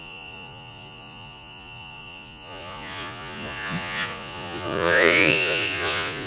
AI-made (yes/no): yes